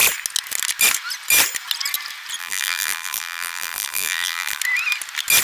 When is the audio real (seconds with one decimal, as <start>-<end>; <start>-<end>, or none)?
0.0-2.4; 4.6-5.4

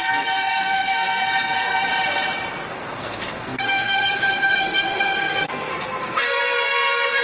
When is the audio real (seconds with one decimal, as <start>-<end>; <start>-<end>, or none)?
1.9-2.7

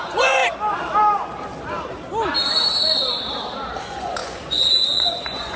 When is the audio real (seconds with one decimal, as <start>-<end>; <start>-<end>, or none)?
0.4-3.8

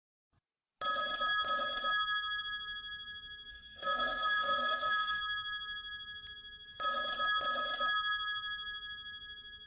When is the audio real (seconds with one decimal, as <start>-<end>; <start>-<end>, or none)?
0.0-3.5; 5.2-9.7

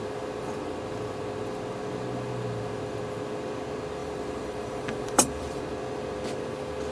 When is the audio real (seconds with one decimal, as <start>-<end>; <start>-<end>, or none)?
0.0-4.0; 5.6-6.9

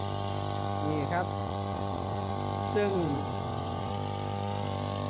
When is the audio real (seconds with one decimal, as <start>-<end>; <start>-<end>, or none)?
0.0-1.4; 2.3-2.9; 3.9-5.1

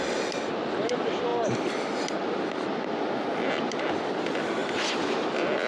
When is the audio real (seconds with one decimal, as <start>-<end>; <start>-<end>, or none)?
0.0-5.7

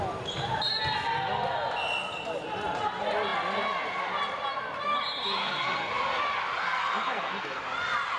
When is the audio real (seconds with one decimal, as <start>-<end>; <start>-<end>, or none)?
0.0-5.4; 5.9-6.6; 7.6-8.2